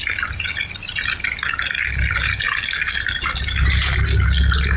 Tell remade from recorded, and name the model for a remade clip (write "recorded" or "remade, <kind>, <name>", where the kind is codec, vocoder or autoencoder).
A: recorded